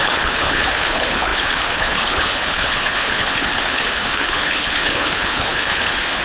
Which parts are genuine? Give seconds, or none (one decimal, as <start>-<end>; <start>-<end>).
none